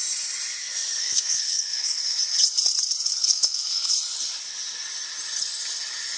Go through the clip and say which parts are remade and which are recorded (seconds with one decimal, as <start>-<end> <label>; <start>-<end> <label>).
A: 0.0-1.0 recorded; 1.0-2.0 remade; 2.0-3.2 recorded; 3.2-3.9 remade; 3.9-6.2 recorded